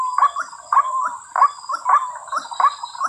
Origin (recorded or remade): recorded